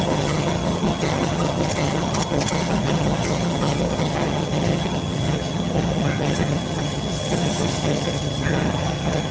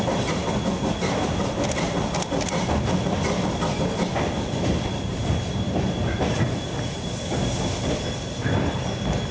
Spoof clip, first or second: first